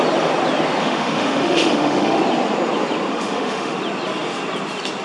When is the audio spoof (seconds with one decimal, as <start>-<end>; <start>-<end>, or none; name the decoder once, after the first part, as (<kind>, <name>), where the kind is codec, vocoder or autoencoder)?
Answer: 0.8-2.2 (autoencoder, DAC-VAE); 3.1-3.8